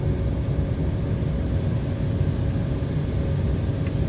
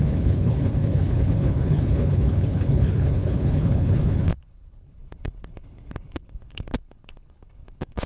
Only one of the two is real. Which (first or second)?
first